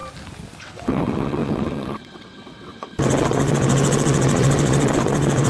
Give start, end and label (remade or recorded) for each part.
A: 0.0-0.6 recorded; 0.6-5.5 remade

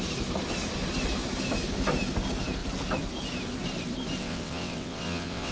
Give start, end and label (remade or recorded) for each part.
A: 0.0-4.2 recorded; 4.2-5.5 remade

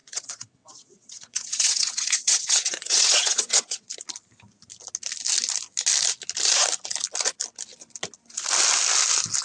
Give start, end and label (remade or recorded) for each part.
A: 0.0-3.9 remade; 3.9-9.4 recorded

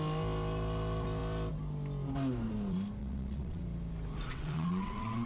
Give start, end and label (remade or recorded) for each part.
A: 0.0-3.0 recorded; 3.0-3.6 remade; 3.6-4.3 recorded; 4.3-5.3 remade

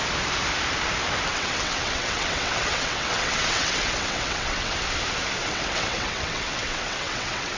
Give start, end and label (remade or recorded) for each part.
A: 0.0-1.3 recorded; 1.3-4.7 remade; 4.7-5.4 recorded; 5.4-7.6 remade

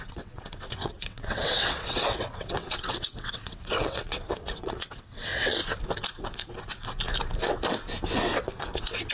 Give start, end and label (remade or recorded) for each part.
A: 0.0-5.6 remade; 5.6-9.1 recorded

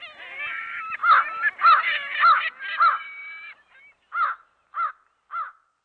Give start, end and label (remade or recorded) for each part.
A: 0.0-5.8 recorded